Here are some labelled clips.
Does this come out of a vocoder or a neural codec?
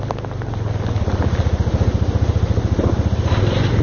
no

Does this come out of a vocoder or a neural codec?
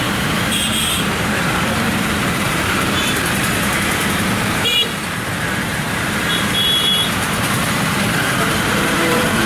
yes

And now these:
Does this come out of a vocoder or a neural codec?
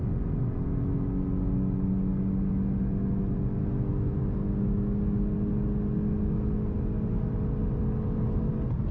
no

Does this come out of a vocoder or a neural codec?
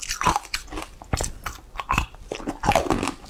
no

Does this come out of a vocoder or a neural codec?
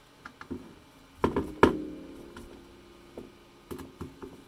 no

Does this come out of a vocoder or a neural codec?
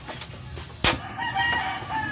no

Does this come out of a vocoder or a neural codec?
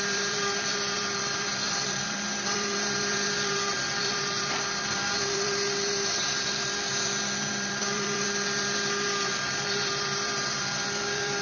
yes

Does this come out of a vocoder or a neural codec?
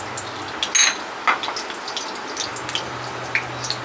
no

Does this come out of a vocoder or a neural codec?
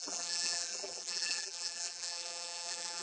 yes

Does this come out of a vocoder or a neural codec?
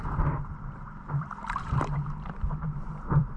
yes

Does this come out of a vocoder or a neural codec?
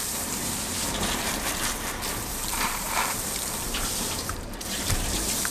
yes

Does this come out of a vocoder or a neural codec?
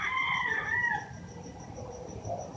yes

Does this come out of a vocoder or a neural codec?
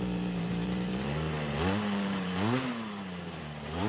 yes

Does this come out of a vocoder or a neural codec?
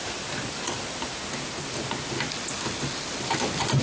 no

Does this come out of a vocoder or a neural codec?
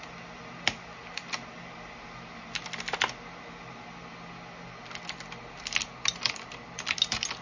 no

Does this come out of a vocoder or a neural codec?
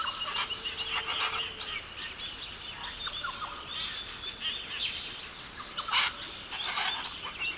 no